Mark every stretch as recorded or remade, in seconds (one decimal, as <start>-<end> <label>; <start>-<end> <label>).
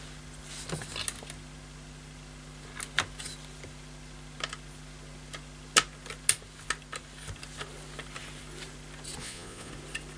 0.0-9.2 recorded; 9.2-9.7 remade; 9.7-10.2 recorded